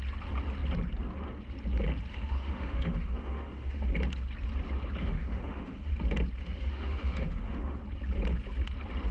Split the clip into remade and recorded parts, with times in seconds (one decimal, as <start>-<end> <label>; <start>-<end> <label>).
0.0-2.1 recorded; 2.1-3.9 remade; 3.9-5.0 recorded; 5.0-5.9 remade; 5.9-6.4 recorded; 6.4-7.8 remade; 7.8-9.1 recorded